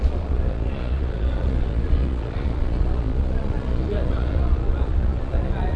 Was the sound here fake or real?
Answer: fake